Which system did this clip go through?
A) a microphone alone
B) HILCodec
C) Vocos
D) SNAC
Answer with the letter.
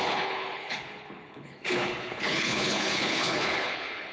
B